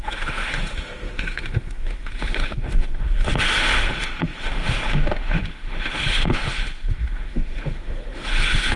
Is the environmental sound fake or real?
fake